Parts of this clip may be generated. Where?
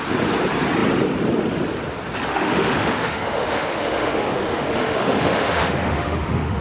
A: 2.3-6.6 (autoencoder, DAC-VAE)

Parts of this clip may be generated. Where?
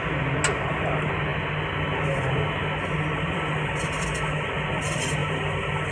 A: none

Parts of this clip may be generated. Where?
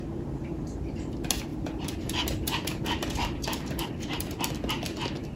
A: 1.5-4.7 (vocoder, BigVGAN v2)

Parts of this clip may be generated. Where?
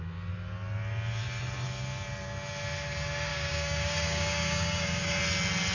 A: 3.3-5.2 (codec, DAC)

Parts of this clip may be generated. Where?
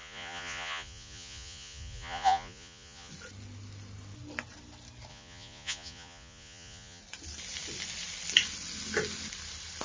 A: 0.0-3.1 (vocoder, Vocos); 5.1-7.0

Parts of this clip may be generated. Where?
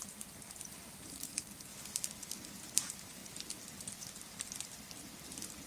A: 0.0-1.7 (vocoder, BigVGAN v2); 2.3-3.2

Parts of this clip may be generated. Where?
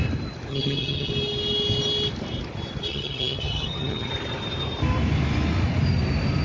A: 0.5-1.1 (vocoder, HiFi-GAN); 2.9-4.1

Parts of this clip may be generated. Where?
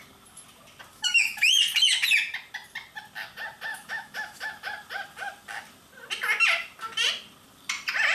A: 0.9-1.8 (autoencoder, DAC-VAE); 3.7-4.5